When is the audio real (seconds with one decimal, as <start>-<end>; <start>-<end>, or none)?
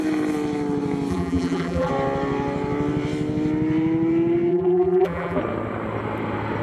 0.0-1.1; 1.9-4.5; 5.4-6.6